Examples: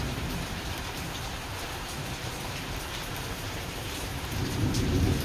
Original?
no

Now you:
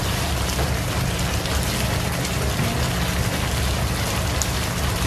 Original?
yes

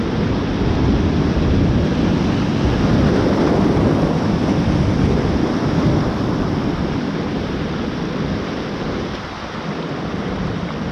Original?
yes